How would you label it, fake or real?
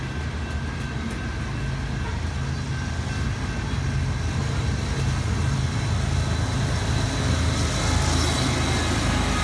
real